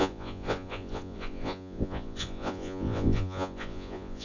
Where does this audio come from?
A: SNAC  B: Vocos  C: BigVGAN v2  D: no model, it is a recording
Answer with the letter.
B